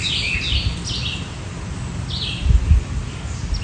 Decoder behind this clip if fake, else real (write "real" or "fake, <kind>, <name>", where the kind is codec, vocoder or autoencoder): real